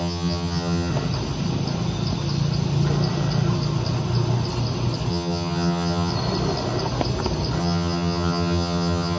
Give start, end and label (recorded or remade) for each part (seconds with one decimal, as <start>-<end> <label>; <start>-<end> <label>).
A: 0.0-0.9 remade; 0.9-5.1 recorded; 5.1-6.1 remade; 6.1-7.6 recorded; 7.6-9.2 remade